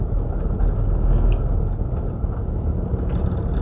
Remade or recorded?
recorded